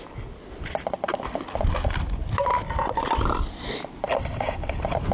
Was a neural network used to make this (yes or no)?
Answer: no